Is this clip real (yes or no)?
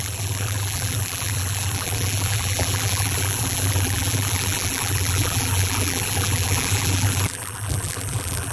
no